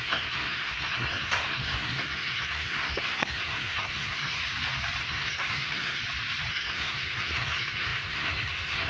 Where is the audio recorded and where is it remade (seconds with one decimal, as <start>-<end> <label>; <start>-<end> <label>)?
0.0-4.4 remade; 4.4-5.0 recorded; 5.0-6.0 remade; 6.0-6.5 recorded; 6.5-8.9 remade

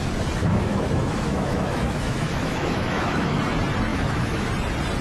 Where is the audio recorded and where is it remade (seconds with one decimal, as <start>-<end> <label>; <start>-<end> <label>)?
0.0-0.4 recorded; 0.4-3.4 remade; 3.4-3.9 recorded; 3.9-4.5 remade; 4.5-5.0 recorded